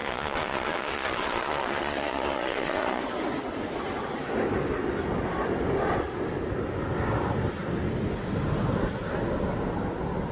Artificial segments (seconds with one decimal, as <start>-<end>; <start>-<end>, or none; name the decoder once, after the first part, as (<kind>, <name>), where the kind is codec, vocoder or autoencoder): 0.0-3.0 (vocoder, Vocos)